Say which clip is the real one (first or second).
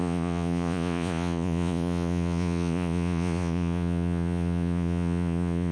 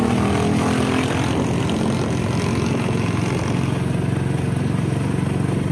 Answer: second